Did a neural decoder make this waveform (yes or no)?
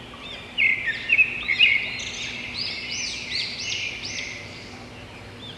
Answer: no